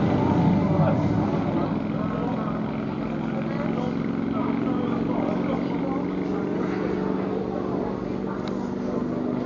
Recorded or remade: recorded